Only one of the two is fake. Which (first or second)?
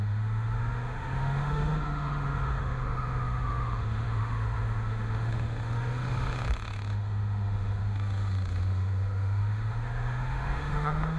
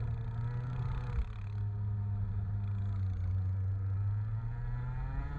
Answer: first